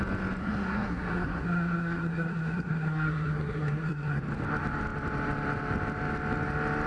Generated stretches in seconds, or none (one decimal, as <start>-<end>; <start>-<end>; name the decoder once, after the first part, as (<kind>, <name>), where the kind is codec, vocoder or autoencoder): 0.4-4.2 (codec, SNAC)